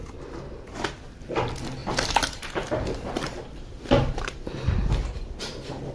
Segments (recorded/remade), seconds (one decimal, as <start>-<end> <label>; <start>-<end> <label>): 0.0-1.8 recorded; 1.8-4.9 remade; 4.9-5.9 recorded